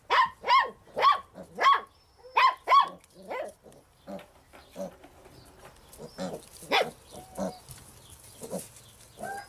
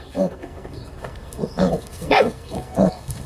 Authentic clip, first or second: first